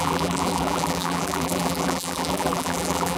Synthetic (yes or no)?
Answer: yes